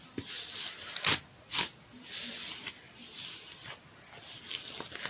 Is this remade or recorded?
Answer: recorded